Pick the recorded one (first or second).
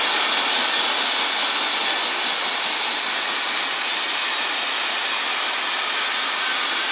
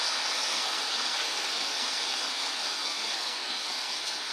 first